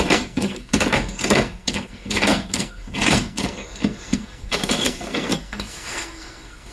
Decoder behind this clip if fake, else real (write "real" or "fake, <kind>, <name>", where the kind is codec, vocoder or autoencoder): fake, codec, SNAC